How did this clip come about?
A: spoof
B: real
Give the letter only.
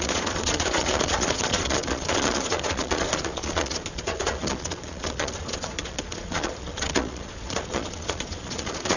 A